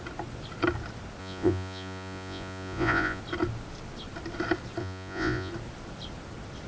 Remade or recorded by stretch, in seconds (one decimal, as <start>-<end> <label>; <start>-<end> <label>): 0.0-1.2 recorded; 1.2-3.2 remade; 3.2-4.8 recorded; 4.8-5.5 remade; 5.5-6.7 recorded